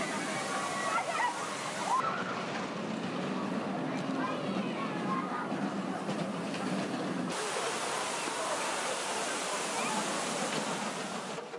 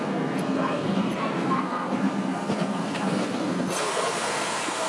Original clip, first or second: first